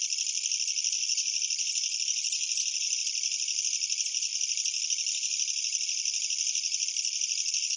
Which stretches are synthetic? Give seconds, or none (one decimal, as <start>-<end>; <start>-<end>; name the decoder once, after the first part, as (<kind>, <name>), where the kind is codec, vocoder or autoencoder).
none